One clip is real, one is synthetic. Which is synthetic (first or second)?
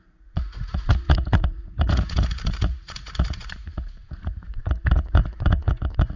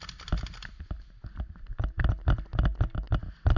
first